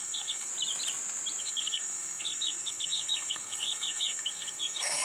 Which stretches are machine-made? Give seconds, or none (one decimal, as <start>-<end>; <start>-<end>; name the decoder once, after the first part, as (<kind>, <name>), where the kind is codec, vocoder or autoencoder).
0.0-0.5 (codec, SNAC); 1.4-5.0